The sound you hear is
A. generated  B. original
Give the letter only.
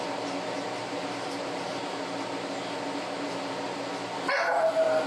B